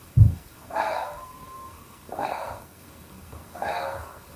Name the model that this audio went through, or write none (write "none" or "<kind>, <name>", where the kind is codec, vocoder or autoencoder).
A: codec, SNAC